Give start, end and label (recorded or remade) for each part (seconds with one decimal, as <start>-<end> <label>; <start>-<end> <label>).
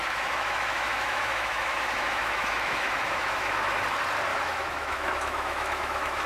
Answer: 0.0-3.8 remade; 3.8-4.3 recorded; 4.3-6.3 remade